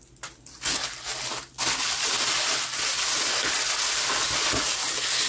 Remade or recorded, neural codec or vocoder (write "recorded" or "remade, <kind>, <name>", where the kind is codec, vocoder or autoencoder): recorded